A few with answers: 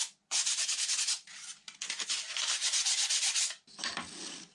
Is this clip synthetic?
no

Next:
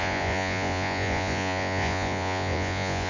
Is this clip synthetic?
yes